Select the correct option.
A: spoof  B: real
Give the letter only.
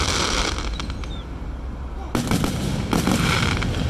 B